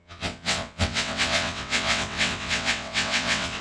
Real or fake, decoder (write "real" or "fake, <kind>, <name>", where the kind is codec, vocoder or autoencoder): fake, vocoder, WaveNeXt